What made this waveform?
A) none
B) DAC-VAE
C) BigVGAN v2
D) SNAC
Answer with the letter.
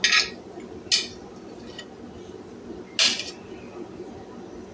A